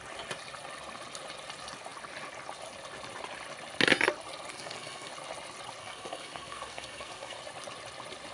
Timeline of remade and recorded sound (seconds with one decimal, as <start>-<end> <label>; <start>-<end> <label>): 0.0-4.5 recorded; 4.5-5.1 remade; 5.1-5.8 recorded; 5.8-7.4 remade; 7.4-8.3 recorded